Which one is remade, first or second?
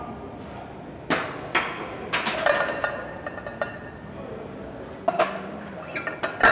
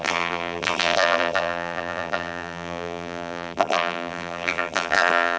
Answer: second